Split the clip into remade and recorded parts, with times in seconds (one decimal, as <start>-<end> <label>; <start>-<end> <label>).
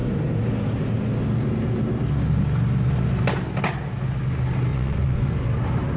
0.0-4.7 recorded; 4.7-5.3 remade; 5.3-6.0 recorded